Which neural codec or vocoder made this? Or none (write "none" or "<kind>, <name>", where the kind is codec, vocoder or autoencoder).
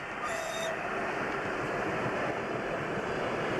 vocoder, BigVGAN v2